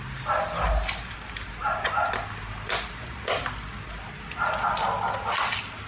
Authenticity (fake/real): real